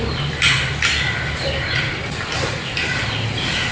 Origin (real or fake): real